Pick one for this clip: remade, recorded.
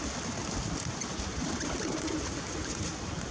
recorded